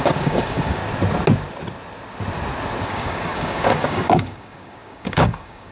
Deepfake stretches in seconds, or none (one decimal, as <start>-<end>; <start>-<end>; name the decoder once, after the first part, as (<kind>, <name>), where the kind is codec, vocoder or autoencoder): 0.0-0.8 (codec, DAC); 2.9-5.7